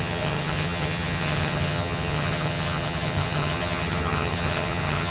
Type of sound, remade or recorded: remade